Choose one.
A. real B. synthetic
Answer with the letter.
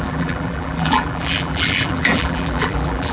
B